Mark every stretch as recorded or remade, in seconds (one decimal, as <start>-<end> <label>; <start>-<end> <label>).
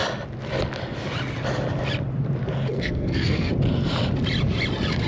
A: 0.0-2.7 recorded; 2.7-3.5 remade; 3.5-5.1 recorded